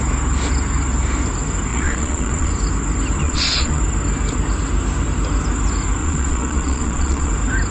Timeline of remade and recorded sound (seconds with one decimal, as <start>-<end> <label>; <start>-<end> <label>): 0.0-1.7 recorded; 1.7-2.5 remade; 2.5-3.2 recorded; 3.2-3.8 remade; 3.8-6.0 recorded; 6.0-7.3 remade; 7.3-7.7 recorded